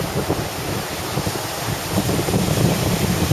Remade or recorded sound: recorded